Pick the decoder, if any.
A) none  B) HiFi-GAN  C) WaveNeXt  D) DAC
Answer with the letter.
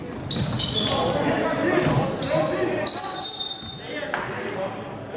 A